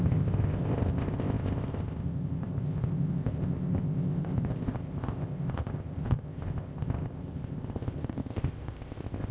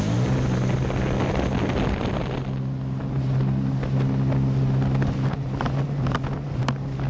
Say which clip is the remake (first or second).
first